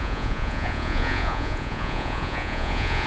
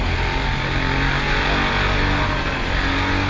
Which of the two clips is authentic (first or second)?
second